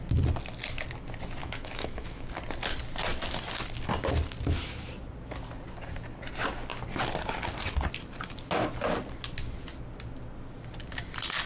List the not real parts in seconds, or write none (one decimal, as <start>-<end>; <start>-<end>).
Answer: 1.4-2.3